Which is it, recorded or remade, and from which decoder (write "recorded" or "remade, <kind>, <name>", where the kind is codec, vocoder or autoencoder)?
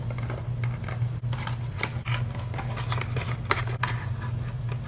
recorded